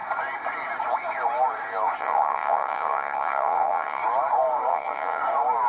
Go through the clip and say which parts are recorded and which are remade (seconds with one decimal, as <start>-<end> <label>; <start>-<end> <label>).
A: 0.0-2.0 recorded; 2.0-4.0 remade; 4.0-4.7 recorded; 4.7-5.2 remade; 5.2-5.7 recorded